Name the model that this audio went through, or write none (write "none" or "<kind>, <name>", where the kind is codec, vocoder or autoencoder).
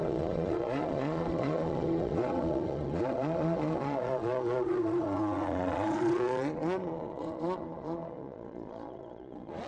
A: vocoder, Vocos